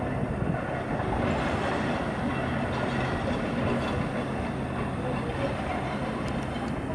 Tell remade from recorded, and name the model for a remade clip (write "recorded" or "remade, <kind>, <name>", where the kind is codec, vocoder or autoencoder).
recorded